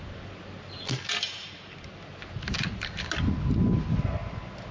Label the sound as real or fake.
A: real